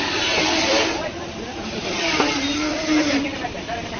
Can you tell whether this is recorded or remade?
remade